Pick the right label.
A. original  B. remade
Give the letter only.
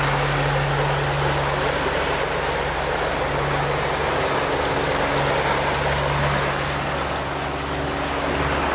A